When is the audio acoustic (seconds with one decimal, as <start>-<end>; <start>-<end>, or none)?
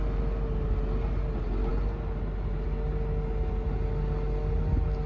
0.0-5.1